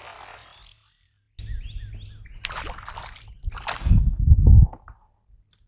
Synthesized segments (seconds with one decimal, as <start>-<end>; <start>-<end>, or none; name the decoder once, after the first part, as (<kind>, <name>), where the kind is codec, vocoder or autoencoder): 3.8-4.5 (codec, DAC)